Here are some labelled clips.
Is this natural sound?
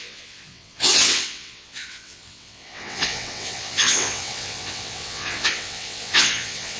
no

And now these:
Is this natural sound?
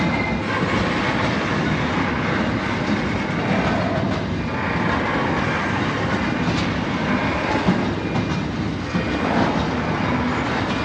yes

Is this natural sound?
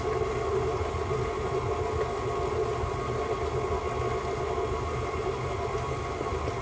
yes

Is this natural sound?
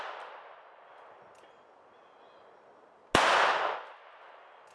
yes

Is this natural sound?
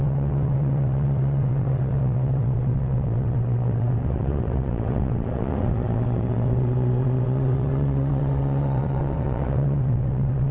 no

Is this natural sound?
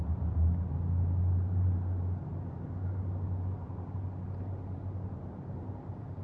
yes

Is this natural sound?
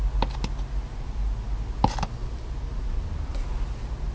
yes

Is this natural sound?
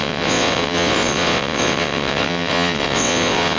no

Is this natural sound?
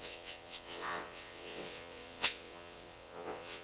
no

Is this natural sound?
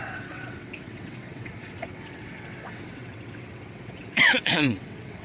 no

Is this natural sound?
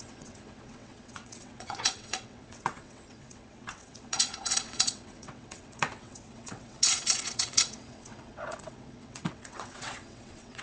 no